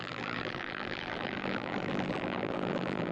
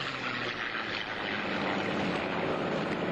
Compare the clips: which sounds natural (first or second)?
second